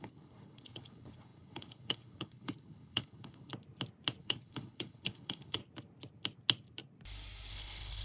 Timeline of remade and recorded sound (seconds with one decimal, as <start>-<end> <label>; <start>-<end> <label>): 0.0-3.5 remade; 3.5-4.2 recorded; 4.2-5.6 remade; 5.6-7.5 recorded; 7.5-8.0 remade